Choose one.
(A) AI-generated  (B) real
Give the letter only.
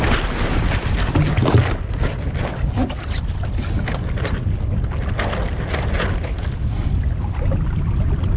B